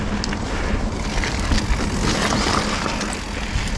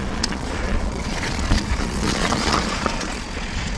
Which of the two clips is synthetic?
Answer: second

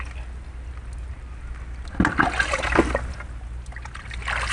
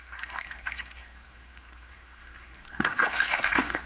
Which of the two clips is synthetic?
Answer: second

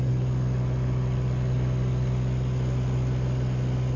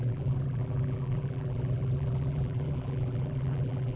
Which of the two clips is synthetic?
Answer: second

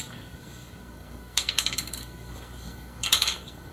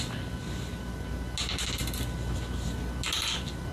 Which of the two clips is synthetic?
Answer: first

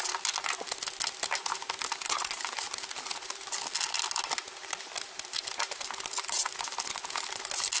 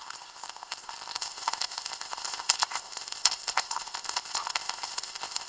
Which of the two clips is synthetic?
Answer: second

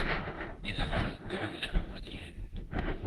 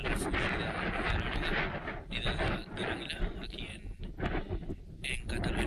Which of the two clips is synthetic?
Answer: first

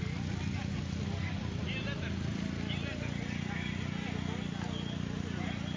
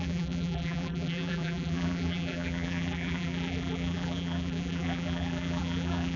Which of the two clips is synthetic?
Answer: second